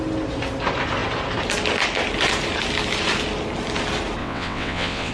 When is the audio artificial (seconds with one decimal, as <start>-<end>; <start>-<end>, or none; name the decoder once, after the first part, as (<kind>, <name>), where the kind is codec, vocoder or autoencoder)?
4.2-5.1 (vocoder, WaveNeXt)